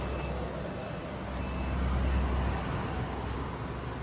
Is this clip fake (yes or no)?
no